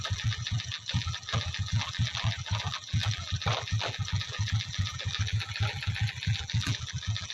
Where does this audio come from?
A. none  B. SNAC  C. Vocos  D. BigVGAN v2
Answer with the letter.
D